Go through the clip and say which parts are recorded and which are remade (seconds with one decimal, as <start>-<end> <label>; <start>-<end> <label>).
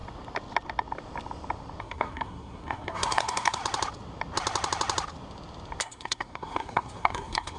0.0-1.8 recorded; 1.8-3.6 remade; 3.6-5.8 recorded; 5.8-7.6 remade